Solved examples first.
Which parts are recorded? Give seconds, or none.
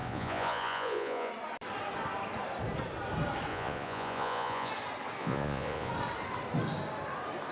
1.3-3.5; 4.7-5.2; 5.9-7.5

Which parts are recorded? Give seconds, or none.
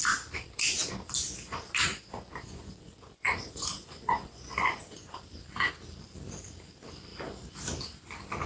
0.0-1.9; 5.1-8.5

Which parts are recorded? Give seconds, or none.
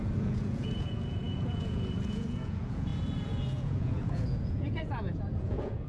none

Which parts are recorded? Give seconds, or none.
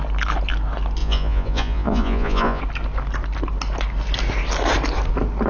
0.0-1.0; 2.6-5.5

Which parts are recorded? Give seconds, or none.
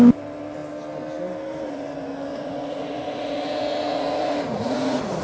0.0-2.3